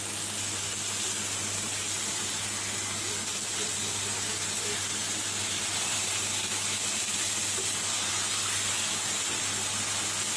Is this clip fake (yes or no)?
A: no